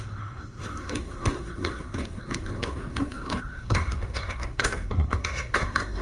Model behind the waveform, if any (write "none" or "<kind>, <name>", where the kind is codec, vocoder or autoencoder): codec, SNAC